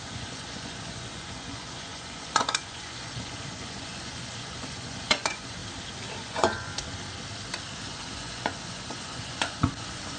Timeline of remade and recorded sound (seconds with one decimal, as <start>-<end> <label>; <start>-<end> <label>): 0.0-5.6 remade; 5.6-6.2 recorded; 6.2-6.7 remade; 6.7-7.8 recorded; 7.8-10.2 remade